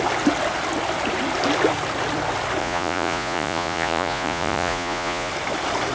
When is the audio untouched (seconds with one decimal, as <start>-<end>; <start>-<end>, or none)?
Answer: 0.0-2.6; 5.3-5.9